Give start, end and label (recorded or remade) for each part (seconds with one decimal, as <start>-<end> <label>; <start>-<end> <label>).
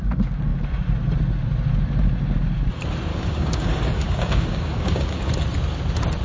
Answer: 0.0-3.1 recorded; 3.1-5.2 remade; 5.2-6.2 recorded